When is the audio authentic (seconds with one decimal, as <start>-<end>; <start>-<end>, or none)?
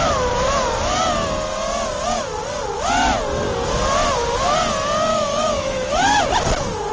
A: 0.0-5.1; 6.2-6.9